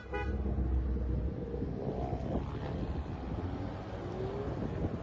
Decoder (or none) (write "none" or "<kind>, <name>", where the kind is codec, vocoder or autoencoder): none